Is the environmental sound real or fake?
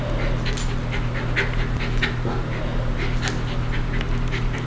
real